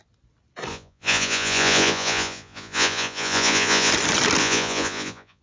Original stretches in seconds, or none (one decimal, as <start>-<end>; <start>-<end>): 0.0-0.7; 3.9-4.4